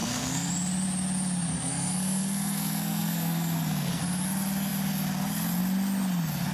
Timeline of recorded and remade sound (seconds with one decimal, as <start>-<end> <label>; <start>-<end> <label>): 0.0-0.5 remade; 0.5-1.5 recorded; 1.5-4.0 remade; 4.0-6.5 recorded